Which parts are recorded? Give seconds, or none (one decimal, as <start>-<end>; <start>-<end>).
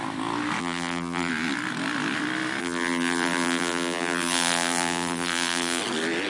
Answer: 0.0-0.6; 1.3-2.6; 5.8-6.3